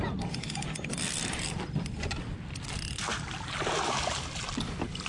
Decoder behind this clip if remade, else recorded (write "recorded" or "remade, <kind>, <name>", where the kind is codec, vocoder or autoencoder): recorded